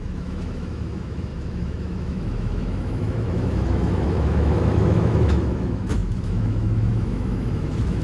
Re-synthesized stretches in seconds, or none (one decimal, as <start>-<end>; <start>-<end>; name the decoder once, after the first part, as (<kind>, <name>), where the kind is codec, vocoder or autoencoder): 0.0-8.0 (autoencoder, DAC-VAE)